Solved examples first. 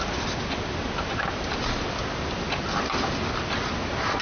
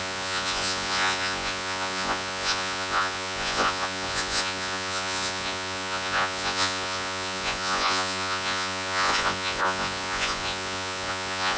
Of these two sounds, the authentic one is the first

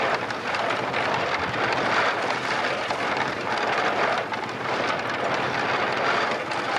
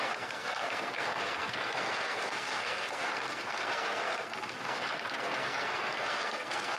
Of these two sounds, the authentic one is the first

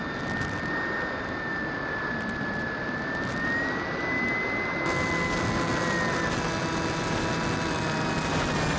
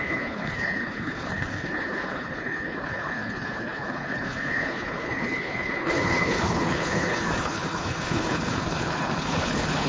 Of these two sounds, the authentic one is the first